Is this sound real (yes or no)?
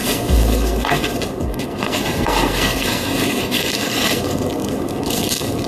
no